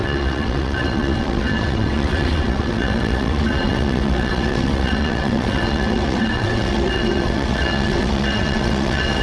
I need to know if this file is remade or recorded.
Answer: remade